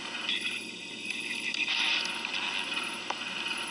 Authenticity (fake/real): real